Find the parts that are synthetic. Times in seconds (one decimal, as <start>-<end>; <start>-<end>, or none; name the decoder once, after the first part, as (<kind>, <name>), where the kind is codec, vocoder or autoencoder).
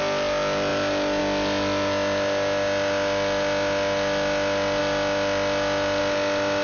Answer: none